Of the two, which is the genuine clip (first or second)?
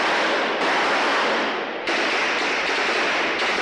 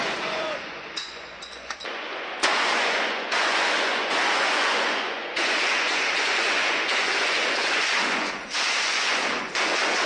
first